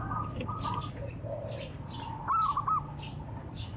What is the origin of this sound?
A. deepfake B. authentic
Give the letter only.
B